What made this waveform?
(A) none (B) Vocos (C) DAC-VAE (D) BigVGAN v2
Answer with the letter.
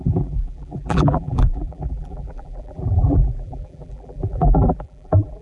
D